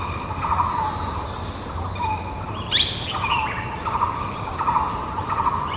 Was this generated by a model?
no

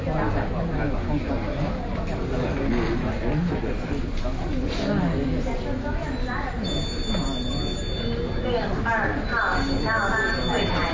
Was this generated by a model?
no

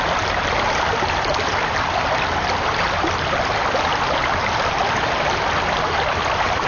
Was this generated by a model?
no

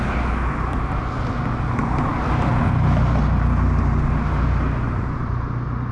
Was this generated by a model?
no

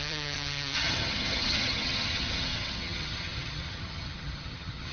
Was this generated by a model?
yes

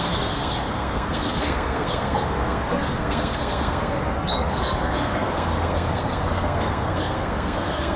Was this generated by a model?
yes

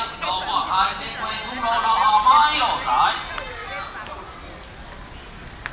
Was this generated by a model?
no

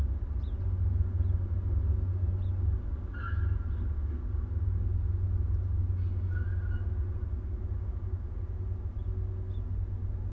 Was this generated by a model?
no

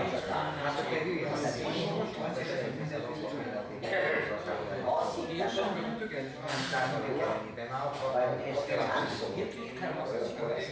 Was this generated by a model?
no